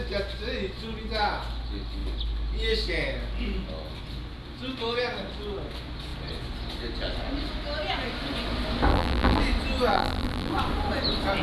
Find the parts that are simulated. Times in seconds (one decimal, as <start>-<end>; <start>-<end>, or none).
8.9-9.4; 9.9-10.5